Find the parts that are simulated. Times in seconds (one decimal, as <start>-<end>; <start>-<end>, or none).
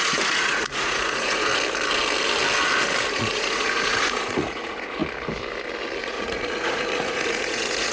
0.0-1.5; 3.1-5.0; 6.0-7.9